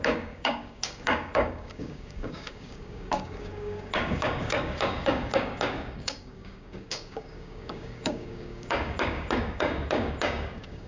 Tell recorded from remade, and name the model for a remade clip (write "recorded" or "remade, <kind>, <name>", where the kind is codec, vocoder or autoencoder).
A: remade, codec, DAC